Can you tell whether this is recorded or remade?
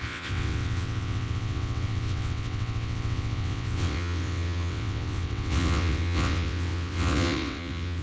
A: remade